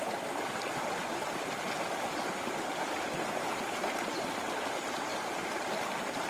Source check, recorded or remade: recorded